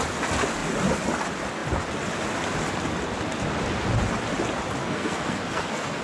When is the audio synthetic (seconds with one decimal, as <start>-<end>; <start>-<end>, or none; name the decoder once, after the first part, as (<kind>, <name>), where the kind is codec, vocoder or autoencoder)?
4.8-6.0 (codec, SNAC)